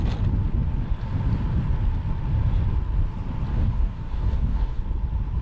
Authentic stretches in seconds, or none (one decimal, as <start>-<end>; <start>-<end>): 0.0-3.5; 4.8-5.4